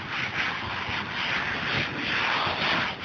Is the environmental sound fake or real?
real